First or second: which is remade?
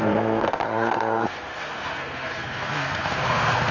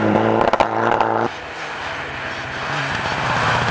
first